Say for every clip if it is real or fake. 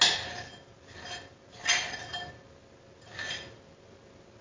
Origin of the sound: real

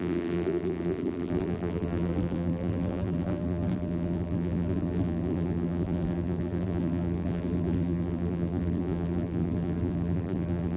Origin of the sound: fake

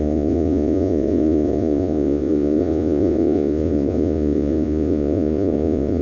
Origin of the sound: fake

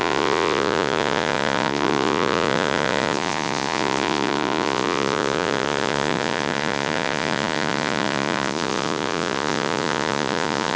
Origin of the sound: fake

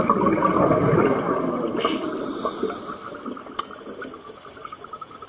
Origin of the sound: real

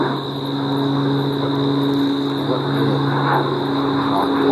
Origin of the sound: real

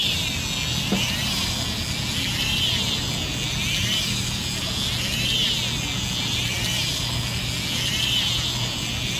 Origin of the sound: real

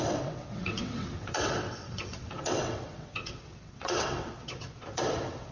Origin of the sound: fake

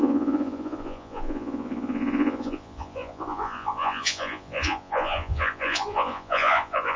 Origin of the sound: fake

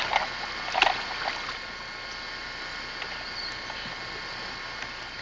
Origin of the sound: real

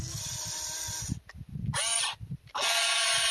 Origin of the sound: real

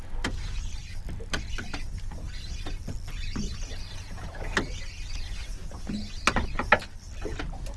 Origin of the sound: real